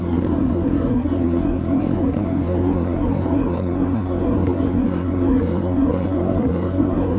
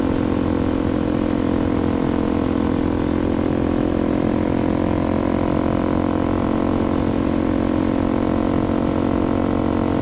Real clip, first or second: second